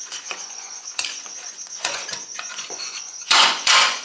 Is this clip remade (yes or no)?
yes